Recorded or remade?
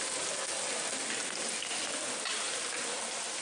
recorded